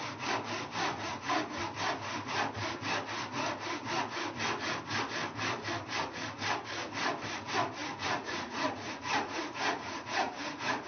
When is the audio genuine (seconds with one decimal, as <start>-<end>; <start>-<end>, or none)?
0.0-0.9; 1.6-7.8